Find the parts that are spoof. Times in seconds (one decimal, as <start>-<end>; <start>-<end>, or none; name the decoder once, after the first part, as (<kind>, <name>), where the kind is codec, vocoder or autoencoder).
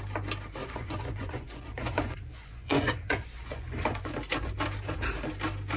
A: 0.6-4.1 (vocoder, Vocos)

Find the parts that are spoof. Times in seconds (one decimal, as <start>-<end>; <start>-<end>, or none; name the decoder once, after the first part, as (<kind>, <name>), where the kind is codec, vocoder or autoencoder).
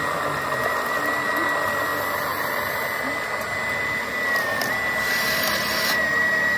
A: none